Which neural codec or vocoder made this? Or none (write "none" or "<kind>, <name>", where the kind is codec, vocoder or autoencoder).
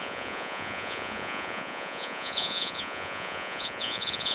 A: vocoder, Vocos